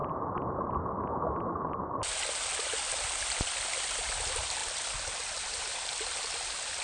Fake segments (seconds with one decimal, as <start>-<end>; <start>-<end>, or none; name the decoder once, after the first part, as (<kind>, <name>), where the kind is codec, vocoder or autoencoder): none